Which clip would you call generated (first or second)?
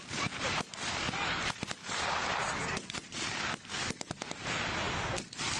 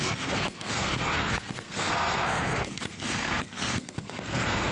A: second